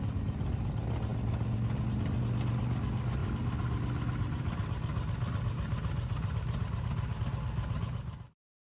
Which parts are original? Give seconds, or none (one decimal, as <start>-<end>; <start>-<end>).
0.0-8.7